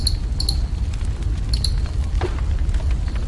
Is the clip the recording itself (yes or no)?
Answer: yes